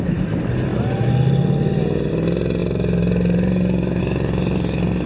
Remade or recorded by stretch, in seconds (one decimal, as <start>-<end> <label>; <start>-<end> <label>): 0.0-5.1 recorded

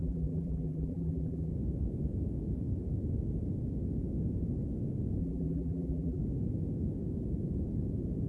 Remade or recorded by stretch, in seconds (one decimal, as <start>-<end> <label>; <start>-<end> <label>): 0.0-1.5 remade; 1.5-5.2 recorded; 5.2-6.2 remade; 6.2-8.3 recorded